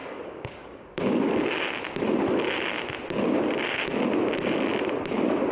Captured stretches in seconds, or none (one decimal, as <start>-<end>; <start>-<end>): 1.5-5.5